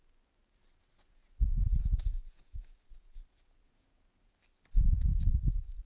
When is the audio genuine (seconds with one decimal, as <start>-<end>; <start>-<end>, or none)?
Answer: 0.0-0.8; 4.3-5.9